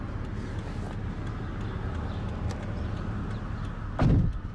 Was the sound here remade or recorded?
recorded